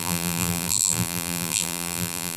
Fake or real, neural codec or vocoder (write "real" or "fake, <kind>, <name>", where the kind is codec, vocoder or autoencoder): fake, vocoder, BigVGAN v2